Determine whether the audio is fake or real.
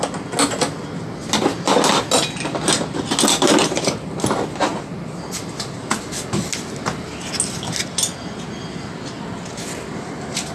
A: real